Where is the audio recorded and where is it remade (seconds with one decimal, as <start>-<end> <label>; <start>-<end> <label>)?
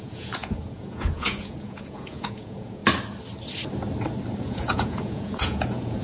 0.0-2.8 remade; 2.8-4.4 recorded; 4.4-6.0 remade